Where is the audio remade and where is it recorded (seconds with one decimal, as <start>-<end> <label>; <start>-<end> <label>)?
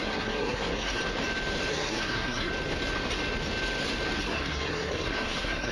0.0-1.0 remade; 1.0-1.7 recorded; 1.7-2.5 remade; 2.5-4.2 recorded; 4.2-5.7 remade